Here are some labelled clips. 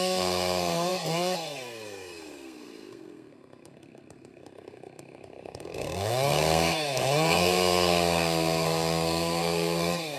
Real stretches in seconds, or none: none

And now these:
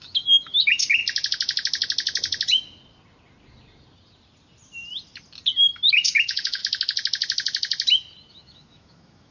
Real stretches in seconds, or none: 1.0-5.9; 6.6-8.3

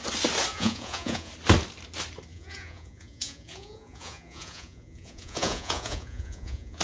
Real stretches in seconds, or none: 0.0-0.5; 1.3-2.3

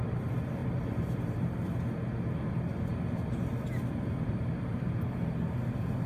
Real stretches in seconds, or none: 0.0-0.6; 1.7-6.1

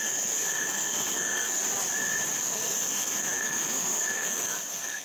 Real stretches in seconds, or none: 1.6-2.4

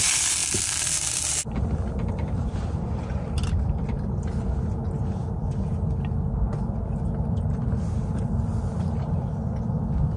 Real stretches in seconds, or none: 0.0-10.2

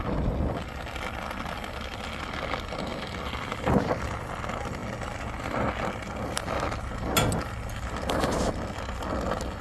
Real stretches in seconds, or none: 0.0-9.6

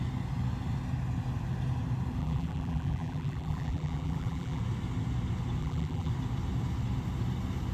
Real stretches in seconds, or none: 0.0-2.2; 4.6-5.6; 6.1-7.7